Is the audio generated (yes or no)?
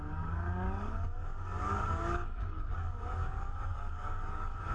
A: yes